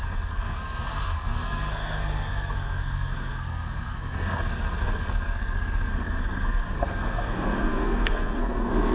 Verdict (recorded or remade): remade